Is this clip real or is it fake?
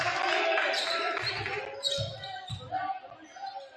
real